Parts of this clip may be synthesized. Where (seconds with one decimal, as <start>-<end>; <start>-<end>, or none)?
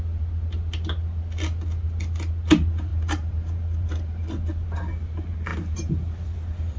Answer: 2.9-4.3